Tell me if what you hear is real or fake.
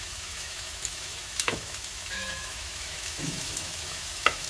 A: fake